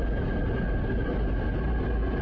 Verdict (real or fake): real